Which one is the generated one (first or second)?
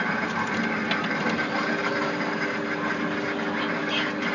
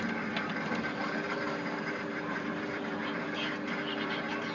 second